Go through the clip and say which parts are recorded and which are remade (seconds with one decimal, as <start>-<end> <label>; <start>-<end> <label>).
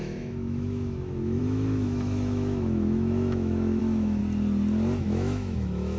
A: 0.0-4.2 remade; 4.2-5.0 recorded; 5.0-6.0 remade